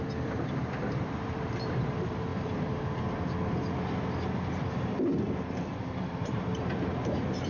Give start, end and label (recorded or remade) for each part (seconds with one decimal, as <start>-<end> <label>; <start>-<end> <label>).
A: 0.0-2.3 remade; 2.3-6.1 recorded; 6.1-7.5 remade